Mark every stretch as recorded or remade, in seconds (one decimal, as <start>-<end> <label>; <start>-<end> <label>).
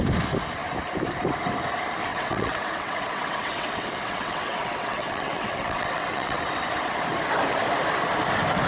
0.0-2.1 recorded; 2.1-6.4 remade; 6.4-8.7 recorded